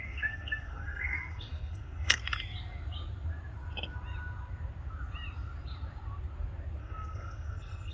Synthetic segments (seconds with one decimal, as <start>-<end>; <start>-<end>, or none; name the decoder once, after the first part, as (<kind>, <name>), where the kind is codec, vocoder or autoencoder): 0.0-2.2 (codec, SNAC); 6.8-7.9